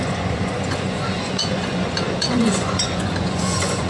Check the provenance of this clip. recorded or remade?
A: remade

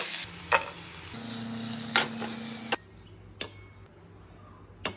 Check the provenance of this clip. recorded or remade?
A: recorded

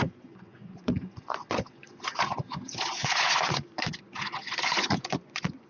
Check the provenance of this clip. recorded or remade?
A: remade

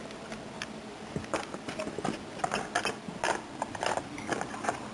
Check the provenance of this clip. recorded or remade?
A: recorded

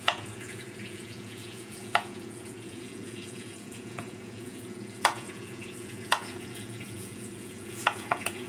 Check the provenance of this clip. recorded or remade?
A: remade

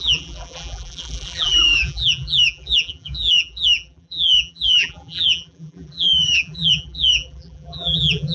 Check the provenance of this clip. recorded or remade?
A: remade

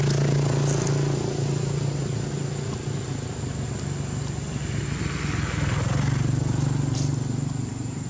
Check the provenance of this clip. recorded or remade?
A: recorded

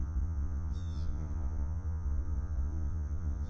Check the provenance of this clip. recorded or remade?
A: remade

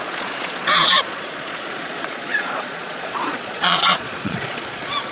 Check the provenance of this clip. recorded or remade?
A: remade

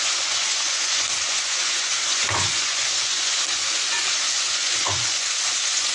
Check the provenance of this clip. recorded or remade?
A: remade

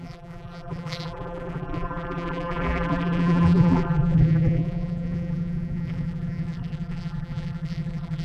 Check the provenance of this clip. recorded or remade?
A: remade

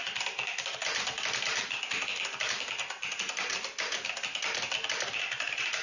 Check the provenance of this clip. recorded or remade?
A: recorded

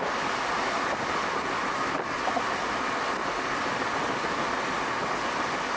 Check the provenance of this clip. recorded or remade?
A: recorded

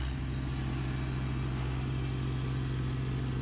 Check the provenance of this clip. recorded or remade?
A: recorded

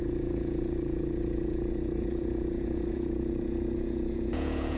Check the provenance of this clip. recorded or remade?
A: remade